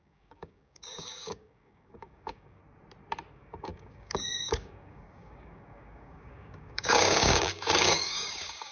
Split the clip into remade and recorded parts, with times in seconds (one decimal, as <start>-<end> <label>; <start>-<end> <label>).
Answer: 0.0-2.6 remade; 2.6-3.3 recorded; 3.3-8.7 remade